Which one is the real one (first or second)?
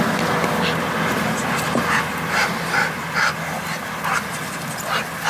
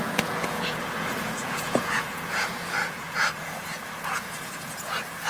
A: first